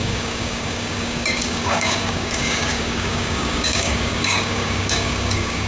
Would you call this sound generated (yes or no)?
yes